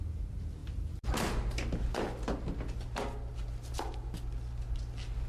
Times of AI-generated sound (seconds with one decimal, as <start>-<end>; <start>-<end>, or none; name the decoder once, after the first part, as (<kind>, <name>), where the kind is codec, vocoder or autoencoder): none